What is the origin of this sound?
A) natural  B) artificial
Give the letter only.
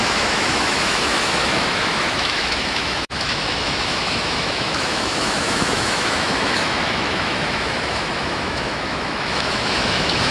B